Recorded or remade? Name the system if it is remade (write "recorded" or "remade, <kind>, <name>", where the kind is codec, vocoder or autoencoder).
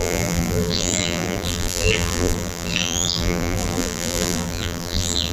remade, vocoder, BigVGAN v2